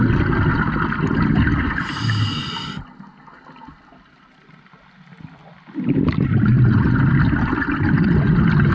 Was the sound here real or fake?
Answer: real